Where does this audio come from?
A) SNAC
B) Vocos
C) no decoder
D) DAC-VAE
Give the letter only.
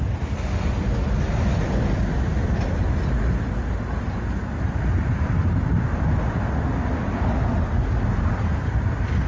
C